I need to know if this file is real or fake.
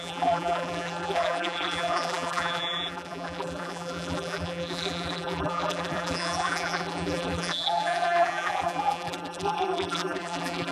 fake